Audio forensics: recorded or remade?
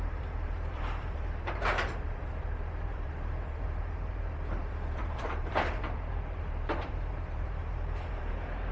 remade